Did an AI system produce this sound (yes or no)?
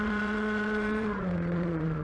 yes